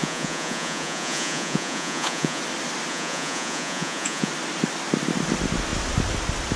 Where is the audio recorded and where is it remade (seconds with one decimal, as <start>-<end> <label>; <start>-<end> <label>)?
0.0-2.4 remade; 2.4-2.9 recorded; 2.9-4.3 remade; 4.3-6.6 recorded